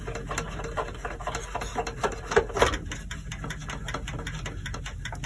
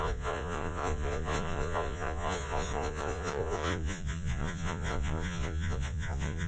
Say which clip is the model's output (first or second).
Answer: second